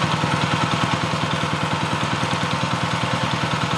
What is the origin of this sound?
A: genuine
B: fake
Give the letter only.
A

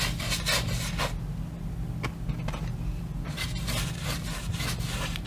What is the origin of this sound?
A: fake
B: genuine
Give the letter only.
B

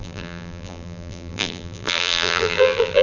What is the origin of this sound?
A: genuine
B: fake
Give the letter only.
B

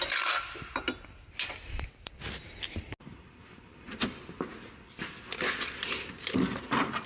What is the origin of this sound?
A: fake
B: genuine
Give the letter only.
B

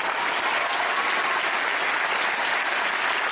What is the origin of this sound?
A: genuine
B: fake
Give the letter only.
A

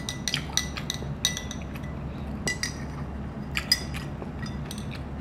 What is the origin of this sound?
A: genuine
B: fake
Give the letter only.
A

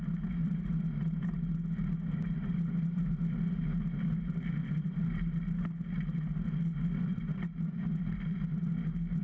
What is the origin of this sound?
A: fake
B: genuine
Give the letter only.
B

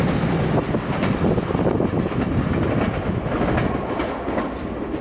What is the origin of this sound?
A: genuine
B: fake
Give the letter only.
A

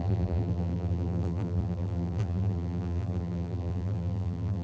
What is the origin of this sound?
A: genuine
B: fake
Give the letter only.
B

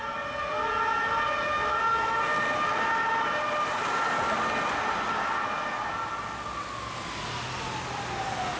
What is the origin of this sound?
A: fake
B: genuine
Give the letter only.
B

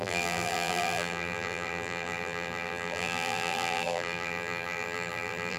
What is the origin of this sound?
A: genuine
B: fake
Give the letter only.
B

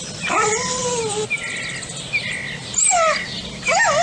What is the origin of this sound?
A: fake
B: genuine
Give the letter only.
B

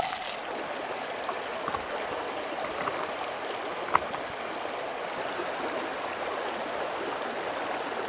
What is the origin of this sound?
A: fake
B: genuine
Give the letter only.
B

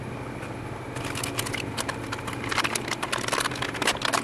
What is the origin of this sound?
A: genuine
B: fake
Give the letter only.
A